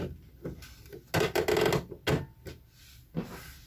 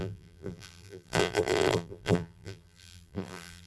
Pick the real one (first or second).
first